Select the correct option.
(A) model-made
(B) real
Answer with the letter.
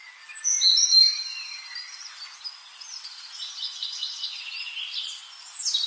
B